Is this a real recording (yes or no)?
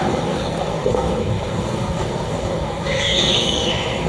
no